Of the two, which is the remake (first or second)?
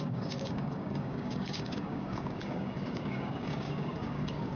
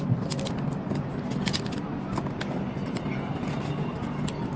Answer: first